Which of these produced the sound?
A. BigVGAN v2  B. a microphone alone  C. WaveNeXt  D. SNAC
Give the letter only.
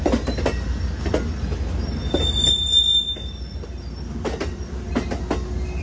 B